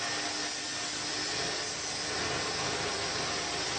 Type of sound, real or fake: real